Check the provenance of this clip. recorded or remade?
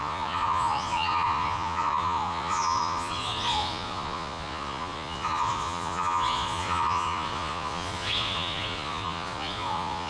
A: remade